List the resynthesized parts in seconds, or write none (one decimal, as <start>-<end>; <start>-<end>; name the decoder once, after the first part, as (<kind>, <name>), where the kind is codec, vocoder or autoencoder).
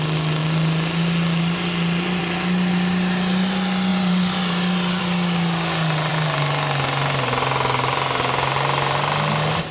3.9-5.0 (vocoder, BigVGAN v2)